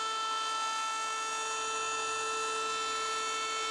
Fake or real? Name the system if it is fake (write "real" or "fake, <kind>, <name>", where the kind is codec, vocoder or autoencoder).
real